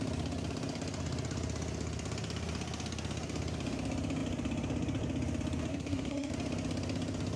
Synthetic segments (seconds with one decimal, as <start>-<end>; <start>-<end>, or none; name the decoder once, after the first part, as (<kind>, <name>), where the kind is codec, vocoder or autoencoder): 5.7-6.3 (codec, SNAC)